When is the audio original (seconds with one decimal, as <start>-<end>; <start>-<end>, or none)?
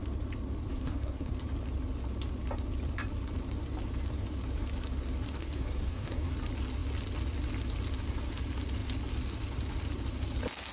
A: 0.0-0.7; 1.3-5.4; 6.3-10.7